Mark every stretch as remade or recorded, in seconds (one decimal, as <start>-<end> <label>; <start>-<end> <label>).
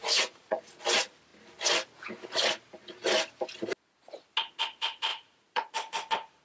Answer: 0.0-0.7 remade; 0.7-5.1 recorded; 5.1-5.7 remade; 5.7-6.4 recorded